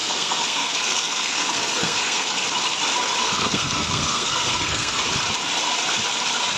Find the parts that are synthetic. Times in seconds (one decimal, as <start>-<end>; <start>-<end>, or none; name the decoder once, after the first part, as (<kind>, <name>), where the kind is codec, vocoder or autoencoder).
0.0-2.4 (codec, SNAC); 3.2-5.0